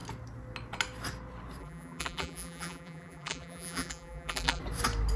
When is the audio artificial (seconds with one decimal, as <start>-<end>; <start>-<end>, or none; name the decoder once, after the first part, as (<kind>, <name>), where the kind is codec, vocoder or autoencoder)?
1.6-4.6 (vocoder, BigVGAN v2)